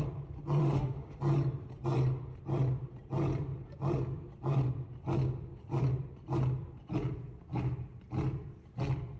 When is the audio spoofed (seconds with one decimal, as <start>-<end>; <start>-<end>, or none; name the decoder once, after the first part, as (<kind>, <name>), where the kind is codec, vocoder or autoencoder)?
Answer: 0.6-1.2 (autoencoder, DAC-VAE)